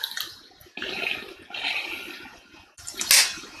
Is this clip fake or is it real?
real